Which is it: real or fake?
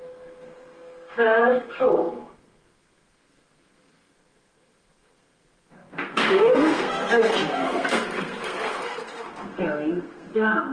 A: fake